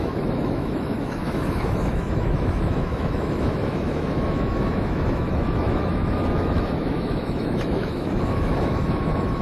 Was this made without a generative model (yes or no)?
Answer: no